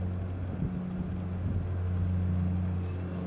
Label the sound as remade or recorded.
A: recorded